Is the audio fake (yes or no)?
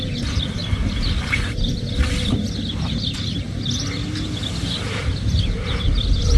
no